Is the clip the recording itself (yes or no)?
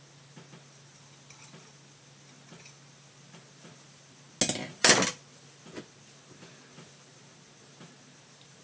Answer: yes